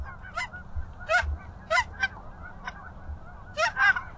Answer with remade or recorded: recorded